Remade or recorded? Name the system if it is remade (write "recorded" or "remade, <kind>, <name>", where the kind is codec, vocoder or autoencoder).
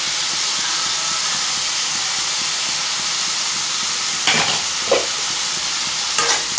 recorded